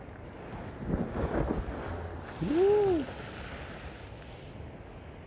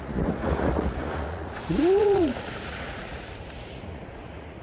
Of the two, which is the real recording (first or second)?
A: first